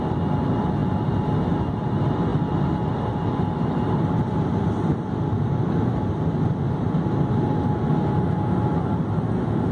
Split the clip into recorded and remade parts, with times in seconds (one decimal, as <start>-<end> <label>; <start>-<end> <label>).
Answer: 0.0-2.3 recorded; 2.3-6.9 remade; 6.9-9.7 recorded